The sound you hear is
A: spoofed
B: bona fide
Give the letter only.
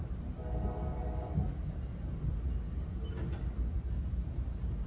B